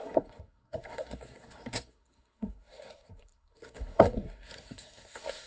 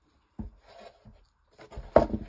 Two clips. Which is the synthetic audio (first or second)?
first